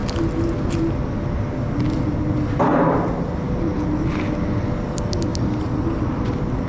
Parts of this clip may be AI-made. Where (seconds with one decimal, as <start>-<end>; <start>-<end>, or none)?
2.7-3.4